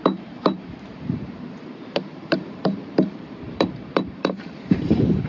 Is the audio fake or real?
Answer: fake